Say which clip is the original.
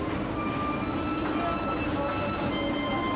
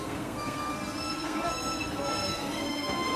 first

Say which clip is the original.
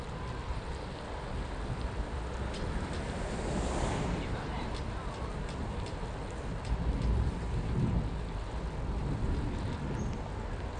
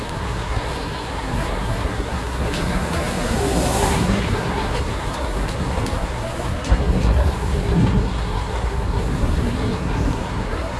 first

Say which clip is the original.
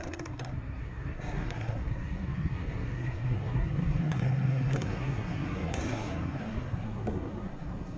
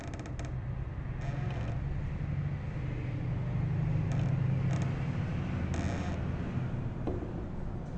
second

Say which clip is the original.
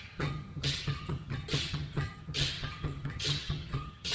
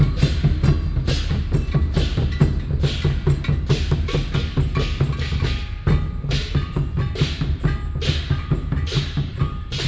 second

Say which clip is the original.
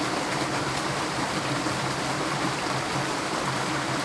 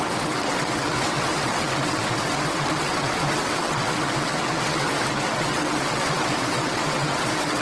first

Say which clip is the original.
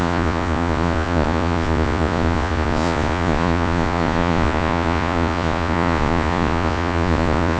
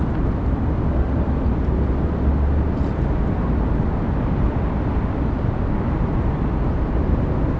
second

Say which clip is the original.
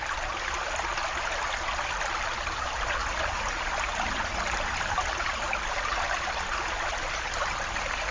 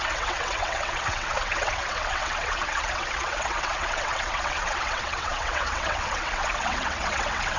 first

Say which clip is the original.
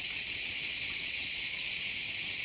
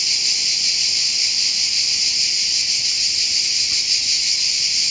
second